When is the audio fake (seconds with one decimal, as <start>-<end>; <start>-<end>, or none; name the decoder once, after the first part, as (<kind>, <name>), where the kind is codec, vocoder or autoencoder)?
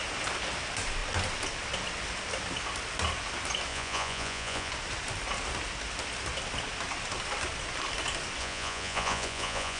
3.7-4.7 (vocoder, Vocos); 8.4-9.8